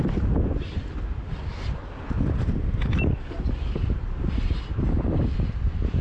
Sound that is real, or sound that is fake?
real